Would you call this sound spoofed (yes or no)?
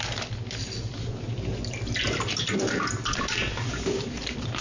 no